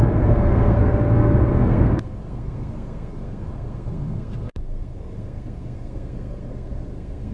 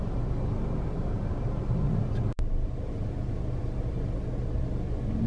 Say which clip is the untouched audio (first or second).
second